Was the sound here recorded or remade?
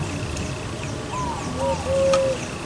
recorded